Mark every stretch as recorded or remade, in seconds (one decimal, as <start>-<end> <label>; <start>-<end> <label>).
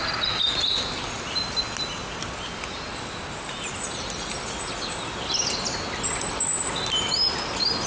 0.0-7.9 recorded